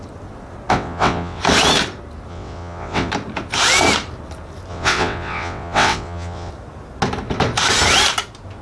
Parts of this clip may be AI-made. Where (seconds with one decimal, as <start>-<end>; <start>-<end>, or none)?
0.7-1.4; 2.3-3.1; 4.7-6.5